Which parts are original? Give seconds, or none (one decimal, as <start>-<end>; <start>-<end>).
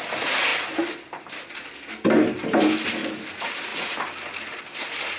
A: 0.0-0.5; 1.6-5.2